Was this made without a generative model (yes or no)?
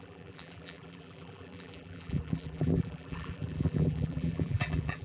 no